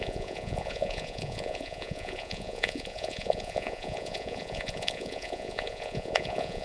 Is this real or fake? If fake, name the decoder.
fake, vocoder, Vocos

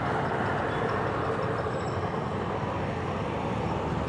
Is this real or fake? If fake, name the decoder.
real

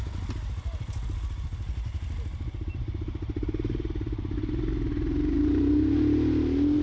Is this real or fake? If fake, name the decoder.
real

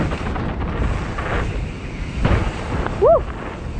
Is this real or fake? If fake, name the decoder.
real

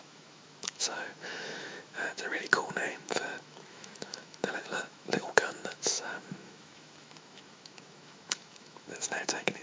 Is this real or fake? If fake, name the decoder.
fake, autoencoder, DAC-VAE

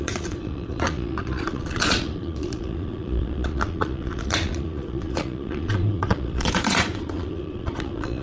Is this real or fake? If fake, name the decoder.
fake, vocoder, Vocos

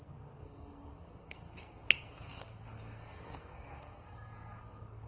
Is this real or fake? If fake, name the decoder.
fake, codec, SNAC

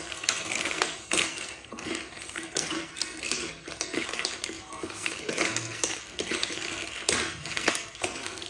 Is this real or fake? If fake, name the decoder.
fake, codec, SNAC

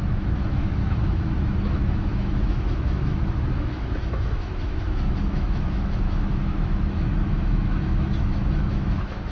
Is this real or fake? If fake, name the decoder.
fake, autoencoder, DAC-VAE